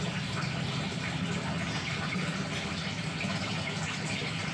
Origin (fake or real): real